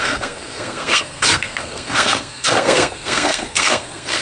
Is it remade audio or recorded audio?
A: remade